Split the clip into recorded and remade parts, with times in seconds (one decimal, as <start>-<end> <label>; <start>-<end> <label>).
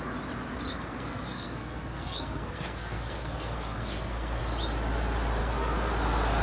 0.0-0.7 recorded; 0.7-4.4 remade; 4.4-5.4 recorded; 5.4-5.9 remade; 5.9-6.4 recorded